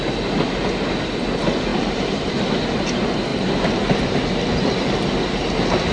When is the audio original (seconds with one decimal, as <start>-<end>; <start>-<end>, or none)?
0.0-1.7; 2.3-3.3; 4.3-5.9

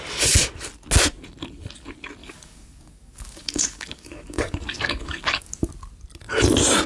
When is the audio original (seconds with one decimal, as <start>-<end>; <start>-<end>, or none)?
0.0-2.2; 5.7-6.9